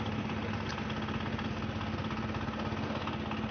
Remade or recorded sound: recorded